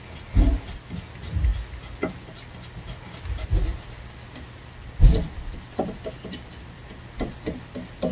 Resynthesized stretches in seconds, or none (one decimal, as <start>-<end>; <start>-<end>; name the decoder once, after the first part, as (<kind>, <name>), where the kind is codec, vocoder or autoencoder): none